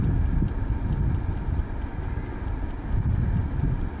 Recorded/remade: recorded